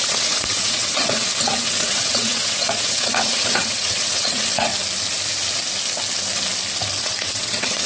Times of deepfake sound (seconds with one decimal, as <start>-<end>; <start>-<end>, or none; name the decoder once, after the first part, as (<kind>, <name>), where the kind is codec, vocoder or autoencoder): 0.0-4.7 (vocoder, WaveNeXt); 7.0-7.9